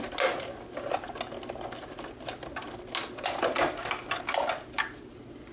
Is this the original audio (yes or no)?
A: yes